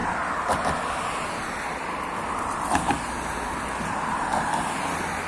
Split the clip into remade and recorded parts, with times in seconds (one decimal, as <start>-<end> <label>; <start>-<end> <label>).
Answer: 0.0-5.3 recorded